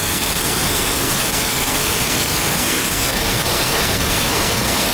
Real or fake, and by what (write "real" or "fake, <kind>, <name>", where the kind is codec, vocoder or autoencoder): fake, codec, SNAC